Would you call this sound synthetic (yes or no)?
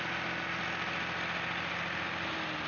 no